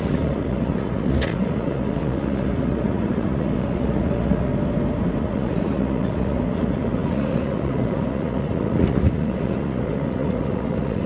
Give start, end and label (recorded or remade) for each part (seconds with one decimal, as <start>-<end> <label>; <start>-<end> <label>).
0.0-4.5 remade; 4.5-5.2 recorded; 5.2-11.1 remade